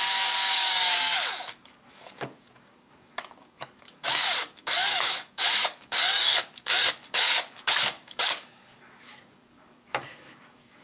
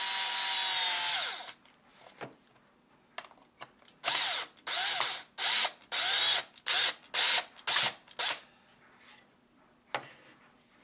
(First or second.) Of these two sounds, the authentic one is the second